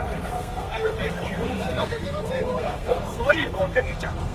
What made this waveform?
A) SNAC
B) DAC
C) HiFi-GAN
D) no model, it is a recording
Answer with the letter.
A